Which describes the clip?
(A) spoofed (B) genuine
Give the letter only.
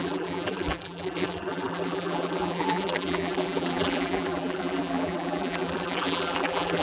A